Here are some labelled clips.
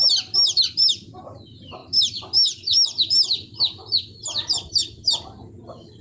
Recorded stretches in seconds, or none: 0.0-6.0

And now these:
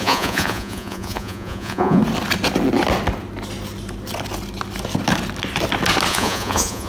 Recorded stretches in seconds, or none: 2.0-6.1

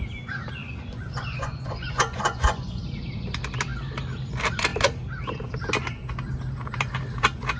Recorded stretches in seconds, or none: 0.0-0.6; 2.8-7.6

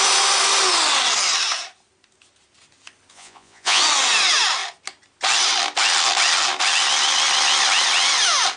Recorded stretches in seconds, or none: 0.0-3.1; 3.8-8.6

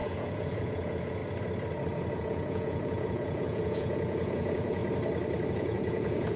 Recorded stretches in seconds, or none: 1.2-2.1; 4.8-5.5

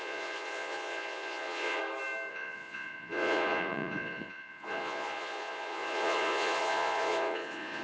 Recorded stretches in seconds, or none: 1.8-2.3

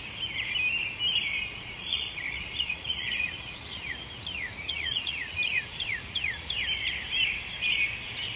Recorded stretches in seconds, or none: 0.0-1.5; 6.5-8.4